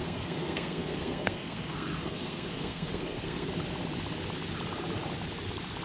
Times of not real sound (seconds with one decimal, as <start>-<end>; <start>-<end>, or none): 0.0-3.5